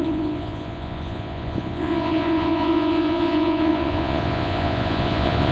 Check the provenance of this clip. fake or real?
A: fake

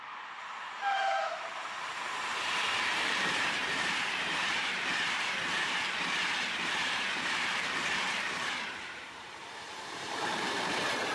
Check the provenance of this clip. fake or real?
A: fake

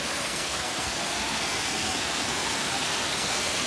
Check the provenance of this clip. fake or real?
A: fake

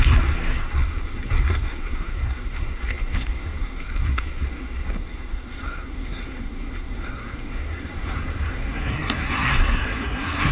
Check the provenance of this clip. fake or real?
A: fake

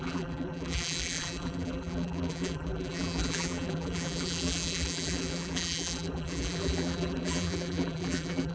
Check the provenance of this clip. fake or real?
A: fake